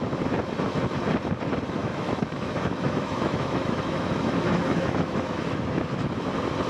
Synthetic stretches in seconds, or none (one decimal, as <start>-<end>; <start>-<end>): 1.8-5.8